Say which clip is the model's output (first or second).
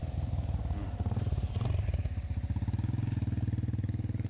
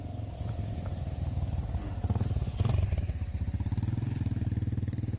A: second